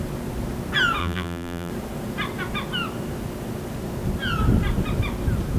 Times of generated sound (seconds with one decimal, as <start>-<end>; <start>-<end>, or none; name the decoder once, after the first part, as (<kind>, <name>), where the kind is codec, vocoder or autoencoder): 1.0-1.7 (vocoder, BigVGAN v2)